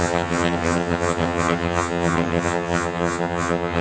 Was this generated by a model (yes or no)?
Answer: yes